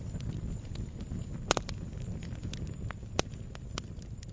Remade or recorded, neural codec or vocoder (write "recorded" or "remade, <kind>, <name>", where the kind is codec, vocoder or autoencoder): recorded